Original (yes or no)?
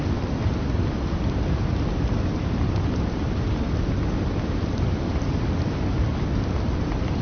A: yes